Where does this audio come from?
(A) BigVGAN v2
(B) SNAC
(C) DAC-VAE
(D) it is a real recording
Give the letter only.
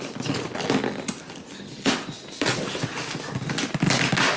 D